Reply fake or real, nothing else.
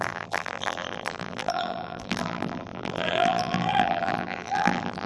fake